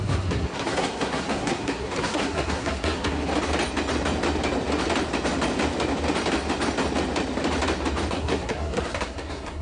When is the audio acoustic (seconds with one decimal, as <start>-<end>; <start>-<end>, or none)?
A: 3.3-8.1